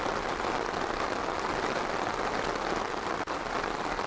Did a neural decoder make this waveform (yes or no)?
no